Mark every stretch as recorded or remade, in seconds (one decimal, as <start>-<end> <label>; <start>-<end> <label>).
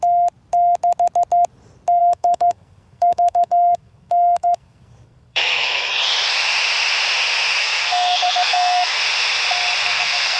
0.0-2.0 recorded; 2.0-5.9 remade; 5.9-7.6 recorded; 7.6-9.0 remade; 9.0-9.8 recorded; 9.8-10.4 remade